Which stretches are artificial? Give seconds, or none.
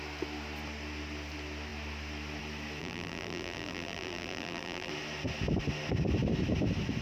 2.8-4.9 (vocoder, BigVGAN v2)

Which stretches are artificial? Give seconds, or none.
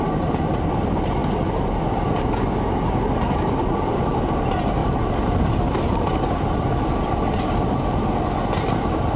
4.8-8.1 (vocoder, BigVGAN v2)